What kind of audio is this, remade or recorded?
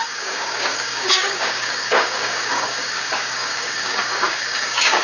remade